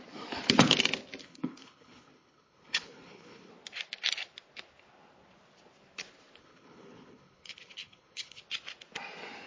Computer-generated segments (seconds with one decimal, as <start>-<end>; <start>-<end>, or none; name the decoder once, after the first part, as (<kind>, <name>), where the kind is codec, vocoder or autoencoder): 1.2-3.5 (codec, HILCodec); 6.4-8.4